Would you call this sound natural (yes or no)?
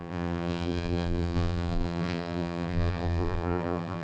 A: no